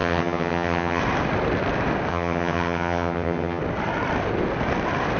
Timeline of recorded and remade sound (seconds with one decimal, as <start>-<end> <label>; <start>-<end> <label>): 0.0-1.0 remade; 1.0-2.1 recorded; 2.1-3.6 remade; 3.6-5.2 recorded